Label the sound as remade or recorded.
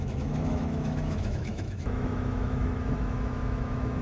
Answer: remade